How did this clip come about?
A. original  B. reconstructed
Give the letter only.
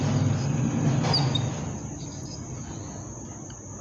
A